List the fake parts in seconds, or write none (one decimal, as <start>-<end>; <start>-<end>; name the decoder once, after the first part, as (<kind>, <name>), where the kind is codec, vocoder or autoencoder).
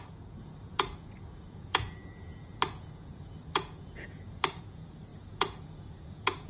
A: 0.0-6.5 (vocoder, Vocos)